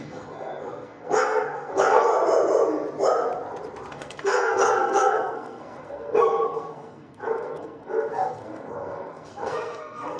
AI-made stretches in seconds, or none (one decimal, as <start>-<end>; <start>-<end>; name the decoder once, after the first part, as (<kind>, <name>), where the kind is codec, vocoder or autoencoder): 0.0-2.1 (codec, SNAC); 3.9-10.2